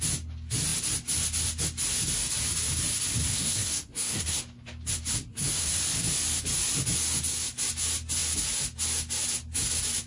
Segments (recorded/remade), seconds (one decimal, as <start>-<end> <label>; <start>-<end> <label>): 0.0-3.3 recorded; 3.3-4.4 remade; 4.4-5.3 recorded; 5.3-5.8 remade; 5.8-10.1 recorded